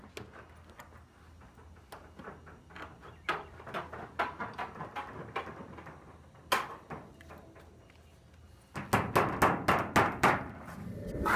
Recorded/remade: recorded